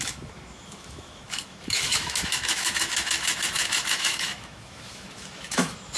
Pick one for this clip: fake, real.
fake